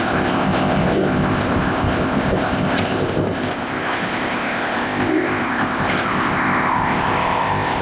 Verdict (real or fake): fake